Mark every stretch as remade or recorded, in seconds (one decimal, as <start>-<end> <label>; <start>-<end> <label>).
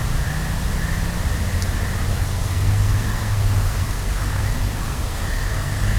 0.0-2.1 recorded; 2.1-6.0 remade